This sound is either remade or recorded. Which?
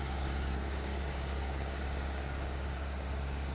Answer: remade